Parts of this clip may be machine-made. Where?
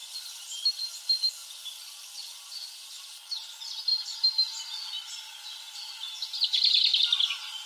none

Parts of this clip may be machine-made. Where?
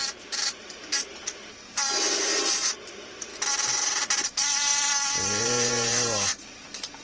0.0-3.3; 5.4-7.0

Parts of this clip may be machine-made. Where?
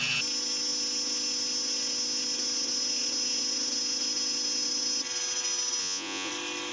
5.8-6.3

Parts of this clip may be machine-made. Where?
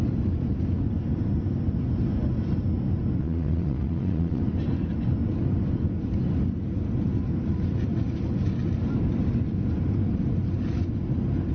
3.2-4.4